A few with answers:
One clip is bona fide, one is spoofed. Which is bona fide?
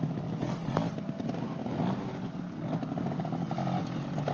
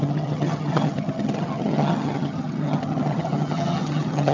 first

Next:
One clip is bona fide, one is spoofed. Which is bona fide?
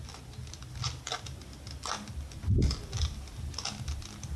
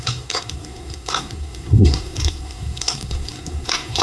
first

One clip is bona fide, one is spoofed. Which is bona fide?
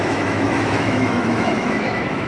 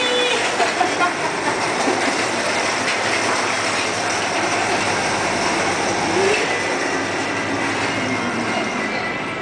second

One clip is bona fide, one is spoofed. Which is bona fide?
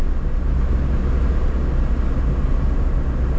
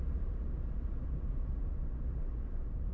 first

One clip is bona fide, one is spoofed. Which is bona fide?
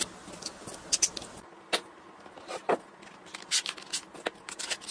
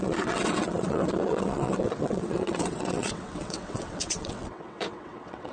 first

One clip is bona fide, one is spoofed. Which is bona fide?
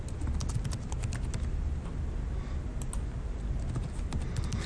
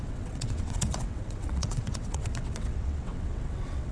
first